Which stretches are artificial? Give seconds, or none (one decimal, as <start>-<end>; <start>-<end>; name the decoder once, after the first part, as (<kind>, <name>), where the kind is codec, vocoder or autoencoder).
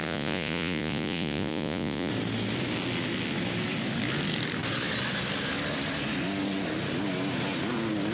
0.0-2.1 (vocoder, Vocos)